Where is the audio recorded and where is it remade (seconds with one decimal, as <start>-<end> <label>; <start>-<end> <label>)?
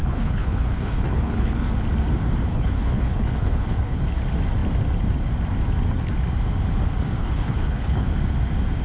0.0-1.7 remade; 1.7-2.5 recorded; 2.5-4.0 remade; 4.0-7.2 recorded; 7.2-8.1 remade; 8.1-8.8 recorded